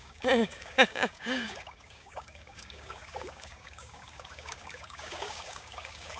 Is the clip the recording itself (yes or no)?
no